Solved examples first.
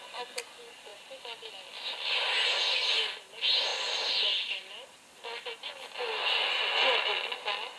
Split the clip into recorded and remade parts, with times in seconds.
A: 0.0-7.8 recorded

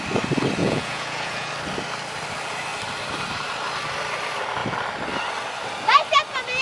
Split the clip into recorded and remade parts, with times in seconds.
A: 0.0-0.6 recorded; 0.6-1.5 remade; 1.5-6.6 recorded

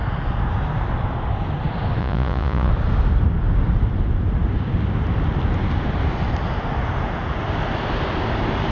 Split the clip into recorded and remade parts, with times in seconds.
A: 0.0-2.0 recorded; 2.0-2.7 remade; 2.7-8.7 recorded

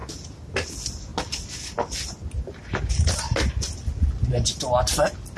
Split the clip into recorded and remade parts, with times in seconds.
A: 0.0-5.4 recorded

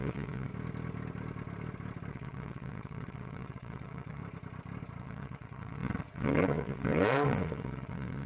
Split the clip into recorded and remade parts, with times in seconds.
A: 0.0-0.5 remade; 0.5-2.1 recorded; 2.1-4.2 remade; 4.2-5.0 recorded; 5.0-8.3 remade